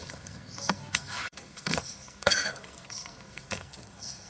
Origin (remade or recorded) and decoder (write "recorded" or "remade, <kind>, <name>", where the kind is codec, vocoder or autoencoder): remade, codec, SNAC